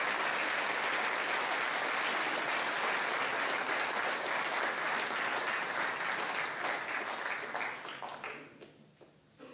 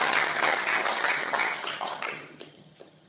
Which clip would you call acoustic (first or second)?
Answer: first